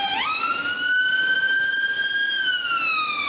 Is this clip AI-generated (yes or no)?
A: no